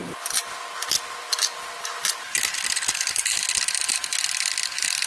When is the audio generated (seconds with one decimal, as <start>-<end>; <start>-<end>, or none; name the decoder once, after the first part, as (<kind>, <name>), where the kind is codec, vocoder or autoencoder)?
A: none